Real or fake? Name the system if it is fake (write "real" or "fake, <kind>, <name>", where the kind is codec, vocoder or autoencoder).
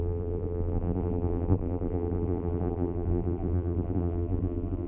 fake, vocoder, BigVGAN v2